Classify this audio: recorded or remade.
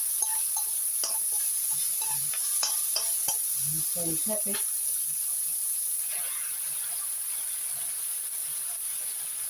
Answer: recorded